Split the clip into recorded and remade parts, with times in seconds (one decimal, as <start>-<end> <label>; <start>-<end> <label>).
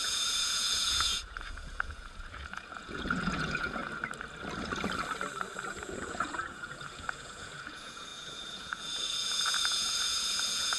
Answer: 0.0-3.8 remade; 3.8-5.7 recorded; 5.7-10.8 remade